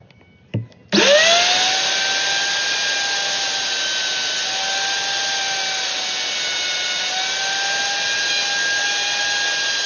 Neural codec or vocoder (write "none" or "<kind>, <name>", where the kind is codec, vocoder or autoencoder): none